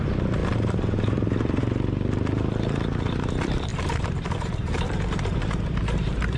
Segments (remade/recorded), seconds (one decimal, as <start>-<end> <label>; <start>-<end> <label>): 0.0-3.7 recorded; 3.7-6.4 remade